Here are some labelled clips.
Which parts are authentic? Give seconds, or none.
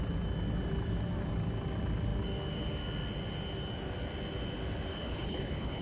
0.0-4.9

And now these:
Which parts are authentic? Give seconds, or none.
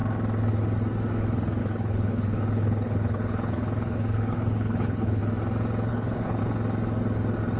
0.0-1.6; 5.2-5.9; 6.4-7.6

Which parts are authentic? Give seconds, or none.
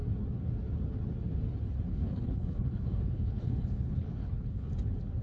0.0-1.9; 4.7-5.2